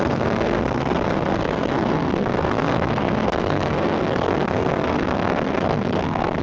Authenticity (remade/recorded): remade